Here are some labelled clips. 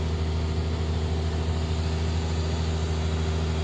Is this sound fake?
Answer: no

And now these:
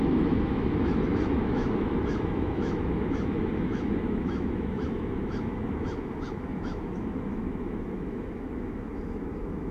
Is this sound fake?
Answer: yes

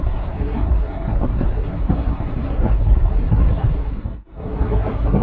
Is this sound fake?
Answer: yes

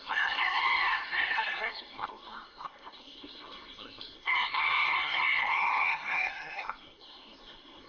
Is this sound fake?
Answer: yes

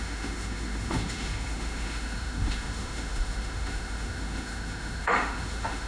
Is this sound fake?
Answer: yes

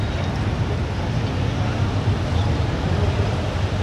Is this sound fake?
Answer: no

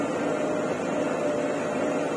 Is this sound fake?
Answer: no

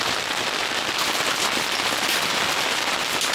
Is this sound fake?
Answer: no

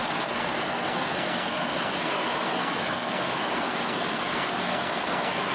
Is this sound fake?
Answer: yes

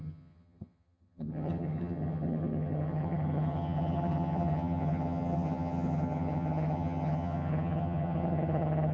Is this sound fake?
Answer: yes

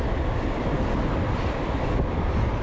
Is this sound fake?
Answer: no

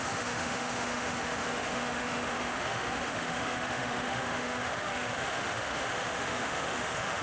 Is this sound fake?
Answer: yes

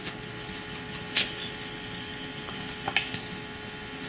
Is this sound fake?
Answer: no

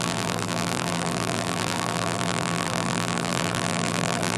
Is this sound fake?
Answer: yes